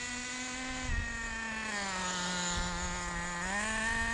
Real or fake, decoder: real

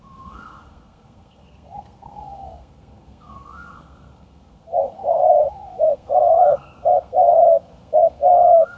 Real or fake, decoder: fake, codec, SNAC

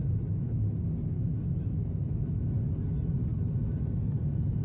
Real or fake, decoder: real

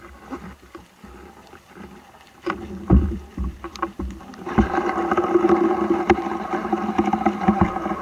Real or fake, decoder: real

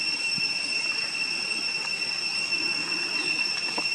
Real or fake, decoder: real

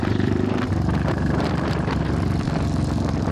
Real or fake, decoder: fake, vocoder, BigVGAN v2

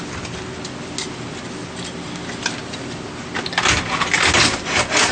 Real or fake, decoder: real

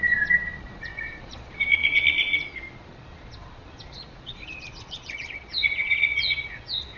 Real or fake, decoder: fake, vocoder, Vocos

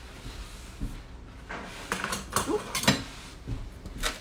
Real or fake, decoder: real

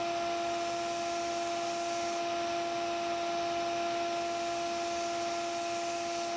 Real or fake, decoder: real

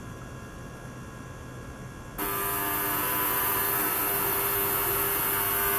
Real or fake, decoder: real